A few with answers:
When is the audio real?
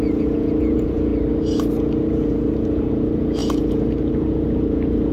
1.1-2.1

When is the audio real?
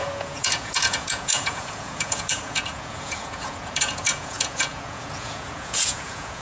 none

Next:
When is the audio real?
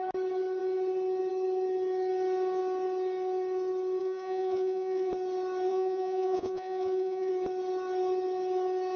0.0-4.0; 5.1-5.7; 7.3-9.0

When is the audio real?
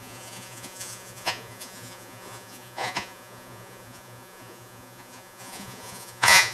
none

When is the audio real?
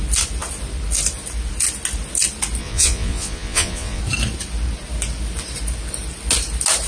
0.0-2.6; 4.0-6.9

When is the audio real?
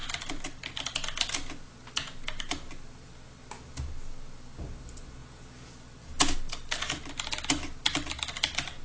0.0-5.2; 5.7-8.8